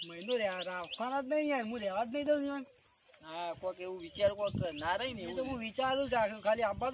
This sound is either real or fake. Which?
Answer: real